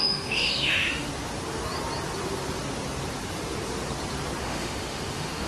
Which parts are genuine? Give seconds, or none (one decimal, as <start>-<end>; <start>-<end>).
1.1-4.4